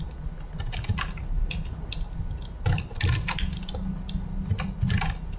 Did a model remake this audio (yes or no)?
no